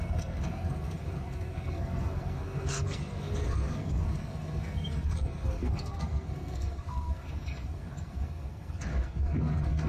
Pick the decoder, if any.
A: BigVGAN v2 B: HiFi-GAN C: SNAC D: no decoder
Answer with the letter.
C